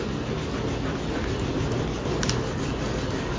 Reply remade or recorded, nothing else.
recorded